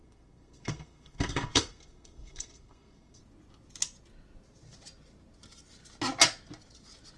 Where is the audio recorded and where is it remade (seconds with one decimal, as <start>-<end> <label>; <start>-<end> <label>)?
0.0-3.2 remade; 3.2-7.2 recorded